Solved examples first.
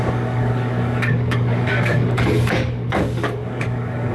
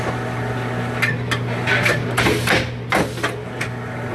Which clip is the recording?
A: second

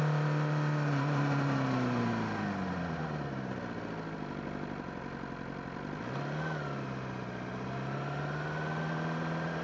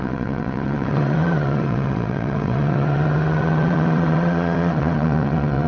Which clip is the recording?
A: first